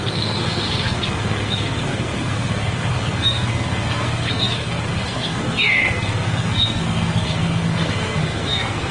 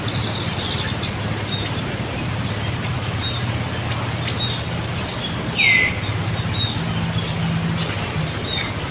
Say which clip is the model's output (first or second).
first